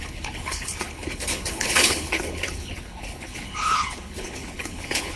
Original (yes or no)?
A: no